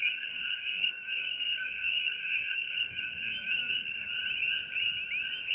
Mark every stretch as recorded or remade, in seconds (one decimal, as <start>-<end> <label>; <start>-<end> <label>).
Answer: 0.0-4.1 remade; 4.1-5.5 recorded